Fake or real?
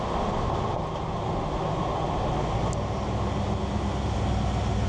real